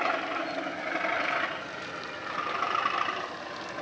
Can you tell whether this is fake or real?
real